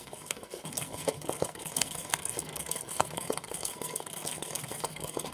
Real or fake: fake